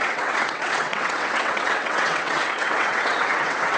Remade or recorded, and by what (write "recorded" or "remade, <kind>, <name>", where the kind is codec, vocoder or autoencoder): remade, vocoder, WaveNeXt